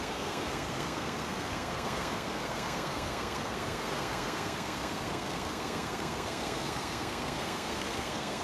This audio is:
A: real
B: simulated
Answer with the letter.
B